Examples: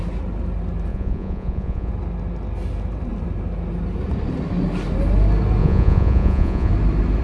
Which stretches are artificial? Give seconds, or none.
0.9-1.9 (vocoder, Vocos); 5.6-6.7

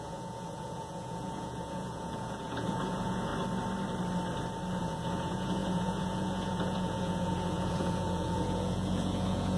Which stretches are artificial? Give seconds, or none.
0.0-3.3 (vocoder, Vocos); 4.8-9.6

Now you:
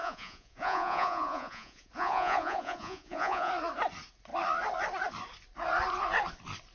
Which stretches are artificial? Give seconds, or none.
0.0-3.5 (vocoder, Vocos)

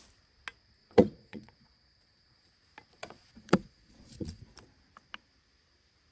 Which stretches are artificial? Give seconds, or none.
0.8-2.5 (vocoder, Vocos); 3.0-4.4